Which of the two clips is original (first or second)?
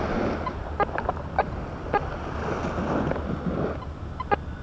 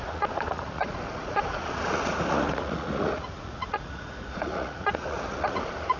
first